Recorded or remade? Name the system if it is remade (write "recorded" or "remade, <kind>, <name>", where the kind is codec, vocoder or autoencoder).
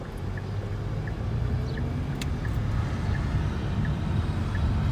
recorded